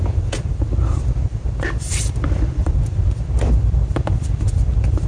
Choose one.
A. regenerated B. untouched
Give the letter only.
A